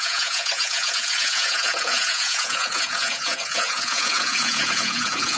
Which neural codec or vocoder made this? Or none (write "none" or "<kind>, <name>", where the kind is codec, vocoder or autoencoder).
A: vocoder, Vocos